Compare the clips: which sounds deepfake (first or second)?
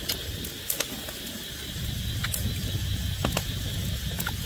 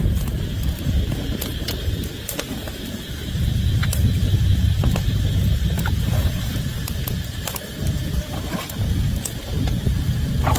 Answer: second